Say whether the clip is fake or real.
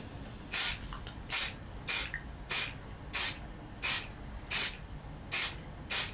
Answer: real